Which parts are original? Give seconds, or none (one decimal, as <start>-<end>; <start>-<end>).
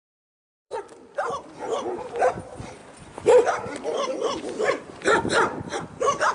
none